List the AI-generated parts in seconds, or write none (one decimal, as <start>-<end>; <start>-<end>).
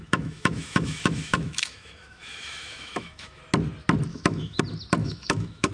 0.0-3.4; 4.1-4.6; 5.0-5.7